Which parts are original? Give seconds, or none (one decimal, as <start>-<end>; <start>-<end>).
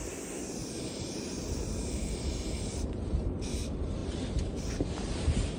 0.0-0.7; 1.6-2.7